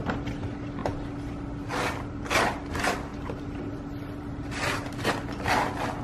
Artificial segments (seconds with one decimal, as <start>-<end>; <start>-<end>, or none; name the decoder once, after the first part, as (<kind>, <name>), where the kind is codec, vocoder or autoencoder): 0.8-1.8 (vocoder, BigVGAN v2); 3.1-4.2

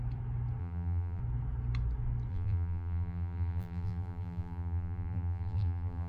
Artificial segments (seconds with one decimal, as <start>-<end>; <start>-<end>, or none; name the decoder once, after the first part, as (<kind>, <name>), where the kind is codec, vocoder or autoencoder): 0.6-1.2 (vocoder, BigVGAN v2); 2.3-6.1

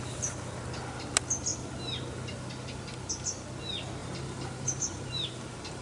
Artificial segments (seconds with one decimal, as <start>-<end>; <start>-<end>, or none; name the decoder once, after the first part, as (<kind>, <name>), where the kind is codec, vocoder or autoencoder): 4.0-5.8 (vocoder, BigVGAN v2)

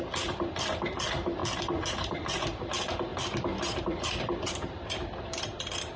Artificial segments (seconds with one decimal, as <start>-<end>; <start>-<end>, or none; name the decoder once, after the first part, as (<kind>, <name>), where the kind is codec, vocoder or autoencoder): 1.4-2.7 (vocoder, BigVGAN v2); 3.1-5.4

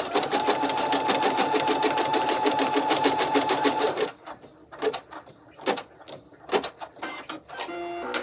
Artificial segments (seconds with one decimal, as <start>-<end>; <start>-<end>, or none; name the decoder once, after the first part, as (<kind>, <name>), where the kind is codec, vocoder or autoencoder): 2.1-5.3 (vocoder, BigVGAN v2)

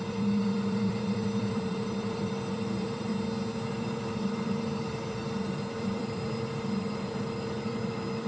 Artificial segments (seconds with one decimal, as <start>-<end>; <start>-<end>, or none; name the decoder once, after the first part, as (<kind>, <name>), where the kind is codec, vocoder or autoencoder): 0.0-3.1 (vocoder, BigVGAN v2); 3.7-8.3

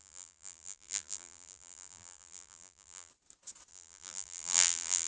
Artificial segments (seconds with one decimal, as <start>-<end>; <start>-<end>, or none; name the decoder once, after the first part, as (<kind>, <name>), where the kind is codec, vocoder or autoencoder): 0.0-3.1 (vocoder, BigVGAN v2); 3.7-5.1